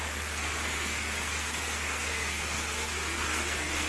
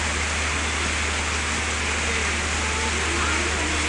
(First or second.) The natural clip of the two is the second